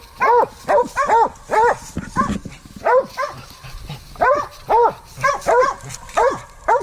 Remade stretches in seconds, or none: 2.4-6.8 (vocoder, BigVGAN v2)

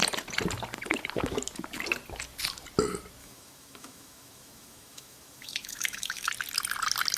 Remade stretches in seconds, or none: 3.2-6.3 (autoencoder, DAC-VAE)

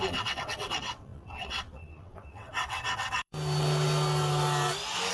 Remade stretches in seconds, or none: 0.0-3.3 (vocoder, WaveNeXt)

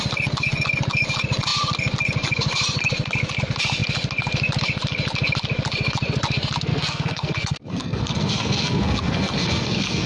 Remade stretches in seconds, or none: 6.7-10.1 (codec, SNAC)

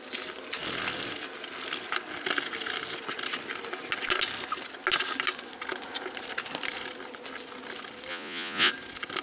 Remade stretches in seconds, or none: 8.1-8.7 (vocoder, Vocos)

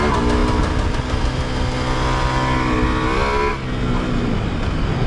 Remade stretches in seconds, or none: none

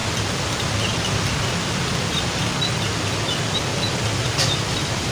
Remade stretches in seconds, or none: none

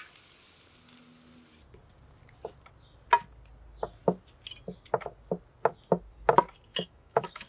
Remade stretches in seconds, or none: 6.7-7.5 (autoencoder, DAC-VAE)